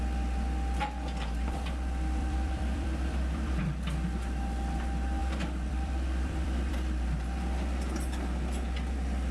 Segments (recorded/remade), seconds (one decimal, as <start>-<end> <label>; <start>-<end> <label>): 0.0-2.2 recorded; 2.2-3.6 remade; 3.6-5.2 recorded; 5.2-6.7 remade; 6.7-9.3 recorded